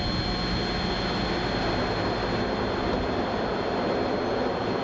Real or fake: real